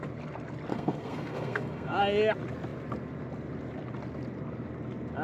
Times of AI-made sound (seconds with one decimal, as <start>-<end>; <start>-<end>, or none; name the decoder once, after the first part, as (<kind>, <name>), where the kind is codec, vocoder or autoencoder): 0.7-2.0 (codec, SNAC)